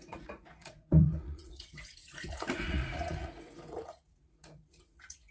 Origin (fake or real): fake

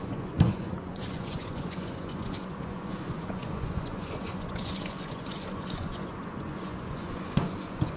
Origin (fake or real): fake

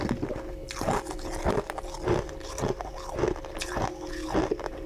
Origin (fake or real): real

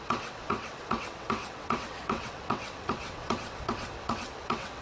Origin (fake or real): fake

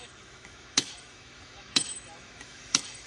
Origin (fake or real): fake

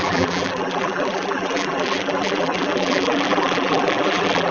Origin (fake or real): fake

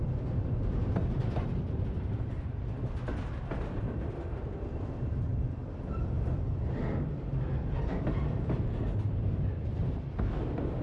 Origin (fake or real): fake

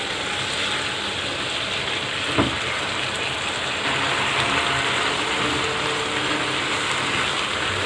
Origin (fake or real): real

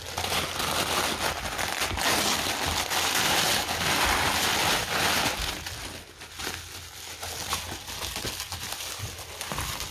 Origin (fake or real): real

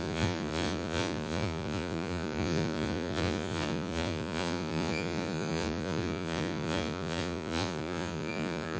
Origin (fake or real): fake